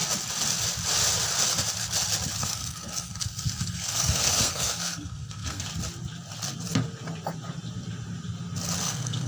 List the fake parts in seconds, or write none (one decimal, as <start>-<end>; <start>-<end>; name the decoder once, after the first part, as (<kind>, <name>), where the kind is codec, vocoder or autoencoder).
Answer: 2.4-5.7 (codec, SNAC); 8.8-9.3